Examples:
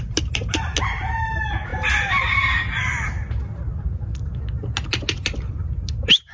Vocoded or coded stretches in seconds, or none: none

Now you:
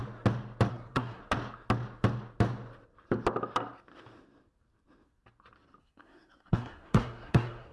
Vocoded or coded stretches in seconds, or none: 0.7-1.2 (codec, SNAC); 5.8-7.7

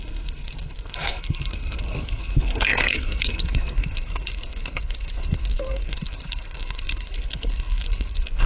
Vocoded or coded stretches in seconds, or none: 0.0-8.5 (codec, SNAC)